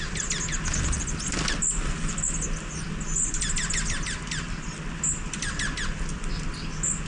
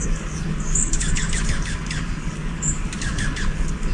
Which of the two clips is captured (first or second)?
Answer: first